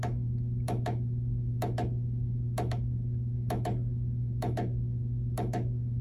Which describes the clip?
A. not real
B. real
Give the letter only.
A